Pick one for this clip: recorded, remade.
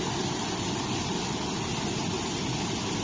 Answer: recorded